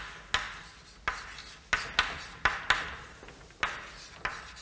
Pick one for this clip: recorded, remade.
recorded